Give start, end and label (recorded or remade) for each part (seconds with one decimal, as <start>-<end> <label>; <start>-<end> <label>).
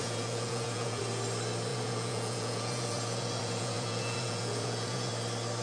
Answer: 0.0-1.0 remade; 1.0-1.7 recorded; 1.7-5.1 remade; 5.1-5.6 recorded